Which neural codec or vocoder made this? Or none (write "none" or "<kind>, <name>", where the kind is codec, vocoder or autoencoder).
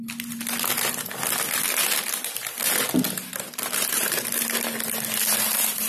none